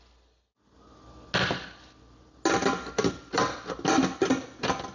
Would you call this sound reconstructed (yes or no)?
no